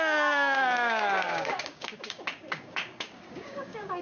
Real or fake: fake